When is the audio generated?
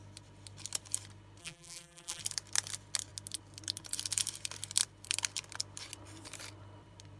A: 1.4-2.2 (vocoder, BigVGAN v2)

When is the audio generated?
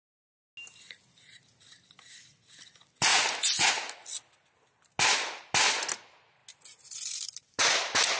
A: none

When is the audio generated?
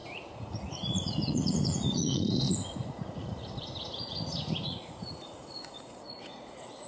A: 0.0-6.9 (vocoder, Vocos)